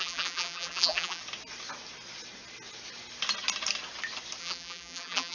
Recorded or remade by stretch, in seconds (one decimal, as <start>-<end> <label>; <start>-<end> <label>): 0.0-1.2 remade; 1.2-4.4 recorded; 4.4-5.3 remade